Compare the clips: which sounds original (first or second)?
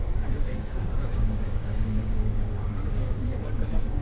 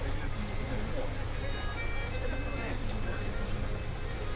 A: second